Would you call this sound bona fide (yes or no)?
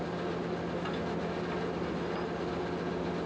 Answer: yes